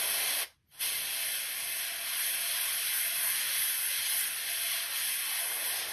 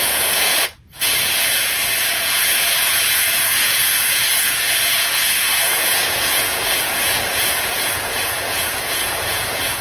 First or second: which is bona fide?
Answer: first